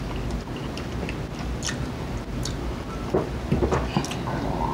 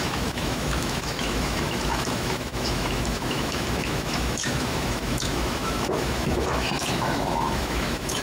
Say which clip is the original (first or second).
first